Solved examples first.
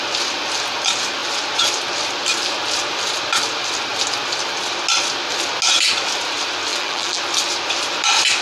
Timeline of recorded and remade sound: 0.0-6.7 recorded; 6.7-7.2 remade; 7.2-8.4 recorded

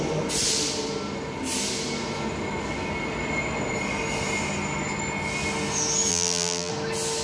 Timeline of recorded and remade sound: 0.0-6.1 recorded; 6.1-6.7 remade; 6.7-7.2 recorded

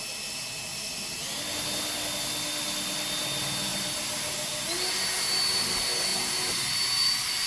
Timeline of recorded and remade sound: 0.0-0.7 recorded; 0.7-2.1 remade; 2.1-3.7 recorded; 3.7-5.0 remade; 5.0-6.1 recorded; 6.1-7.5 remade

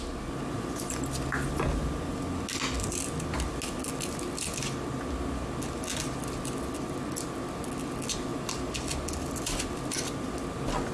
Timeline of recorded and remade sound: 0.0-10.9 recorded